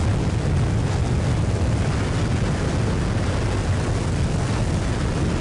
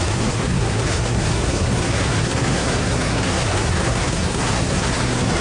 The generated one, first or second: second